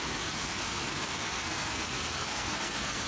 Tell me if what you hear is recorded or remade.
remade